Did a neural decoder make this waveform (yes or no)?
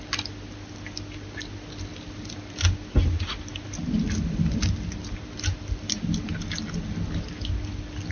no